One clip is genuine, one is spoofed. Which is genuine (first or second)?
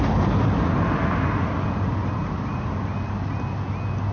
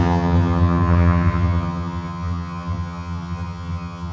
first